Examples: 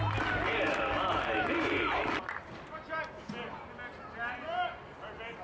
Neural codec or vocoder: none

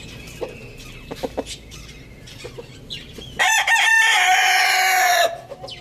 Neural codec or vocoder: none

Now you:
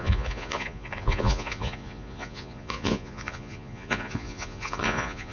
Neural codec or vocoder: vocoder, Vocos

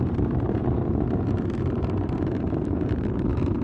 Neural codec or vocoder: vocoder, BigVGAN v2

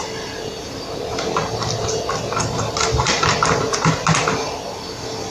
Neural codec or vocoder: none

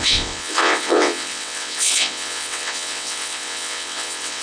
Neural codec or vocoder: vocoder, WaveNeXt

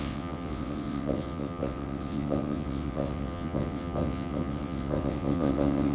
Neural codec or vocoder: vocoder, WaveNeXt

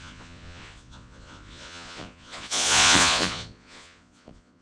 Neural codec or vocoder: vocoder, Vocos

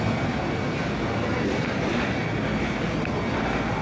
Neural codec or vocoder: none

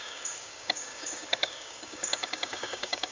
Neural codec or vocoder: codec, DAC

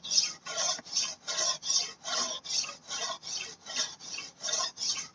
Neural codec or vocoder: none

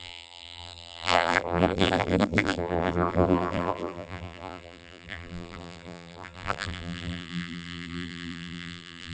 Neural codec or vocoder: vocoder, BigVGAN v2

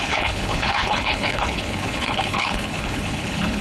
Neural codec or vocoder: codec, HILCodec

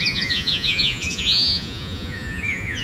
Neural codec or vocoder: vocoder, Vocos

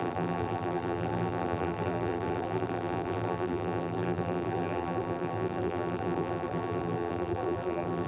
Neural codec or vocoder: vocoder, BigVGAN v2